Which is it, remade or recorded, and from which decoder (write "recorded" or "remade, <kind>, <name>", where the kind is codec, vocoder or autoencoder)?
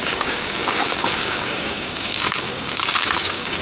remade, codec, DAC